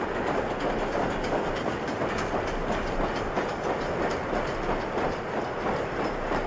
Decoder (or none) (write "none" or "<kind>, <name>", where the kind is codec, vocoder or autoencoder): none